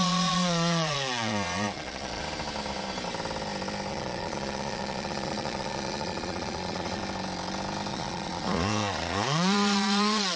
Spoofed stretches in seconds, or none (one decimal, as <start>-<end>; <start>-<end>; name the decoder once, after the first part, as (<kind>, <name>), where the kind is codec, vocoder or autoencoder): 0.0-2.2 (vocoder, Vocos); 3.9-7.0; 7.9-10.4